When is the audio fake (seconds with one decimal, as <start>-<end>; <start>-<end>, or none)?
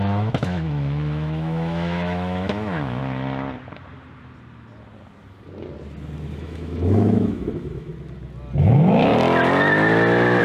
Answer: 0.0-3.0; 6.3-7.9; 8.6-9.1